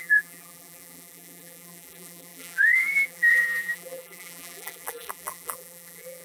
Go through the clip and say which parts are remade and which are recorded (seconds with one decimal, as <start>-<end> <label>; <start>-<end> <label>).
0.0-6.2 remade